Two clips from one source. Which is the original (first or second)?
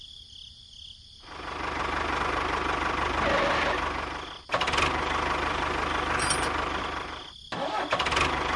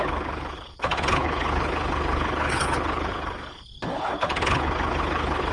first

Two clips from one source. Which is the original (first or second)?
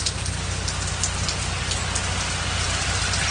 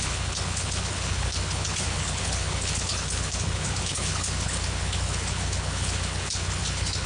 first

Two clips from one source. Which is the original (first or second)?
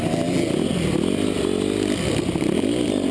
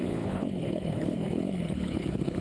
first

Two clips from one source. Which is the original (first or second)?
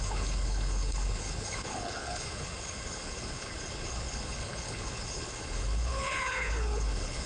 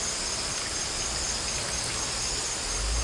second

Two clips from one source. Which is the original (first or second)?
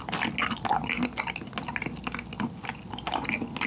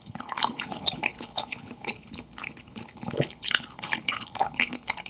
first